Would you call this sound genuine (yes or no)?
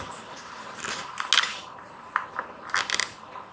yes